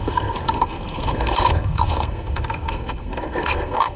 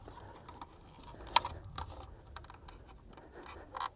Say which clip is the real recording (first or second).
second